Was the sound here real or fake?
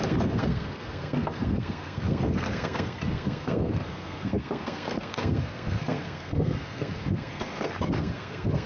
fake